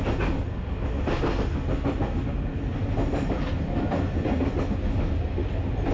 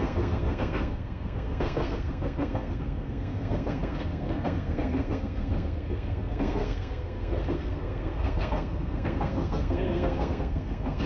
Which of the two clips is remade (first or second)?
second